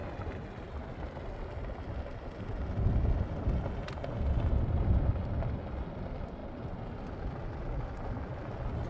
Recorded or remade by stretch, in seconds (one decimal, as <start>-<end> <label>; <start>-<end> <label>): 0.0-8.9 recorded